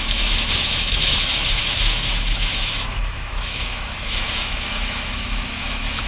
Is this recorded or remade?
remade